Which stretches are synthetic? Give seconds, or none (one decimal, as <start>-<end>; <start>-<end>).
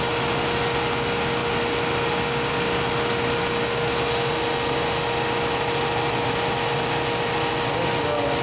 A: none